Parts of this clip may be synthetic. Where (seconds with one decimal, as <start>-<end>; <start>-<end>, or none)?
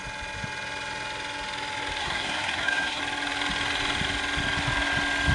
2.0-3.0